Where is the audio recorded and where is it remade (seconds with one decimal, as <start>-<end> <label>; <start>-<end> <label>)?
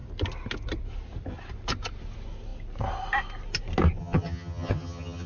0.0-4.0 recorded; 4.0-5.3 remade